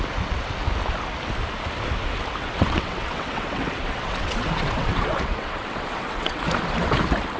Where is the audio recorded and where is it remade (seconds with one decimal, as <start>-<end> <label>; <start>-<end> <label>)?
0.0-2.4 recorded; 2.4-6.4 remade; 6.4-7.4 recorded